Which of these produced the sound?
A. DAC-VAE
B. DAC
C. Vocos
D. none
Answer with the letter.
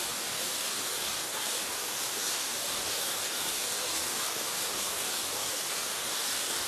B